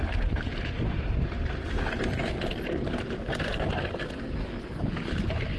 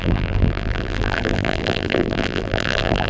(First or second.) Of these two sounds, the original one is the first